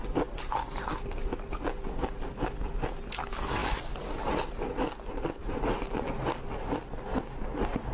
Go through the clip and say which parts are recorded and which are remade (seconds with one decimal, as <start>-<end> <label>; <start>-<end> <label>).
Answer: 0.0-7.9 recorded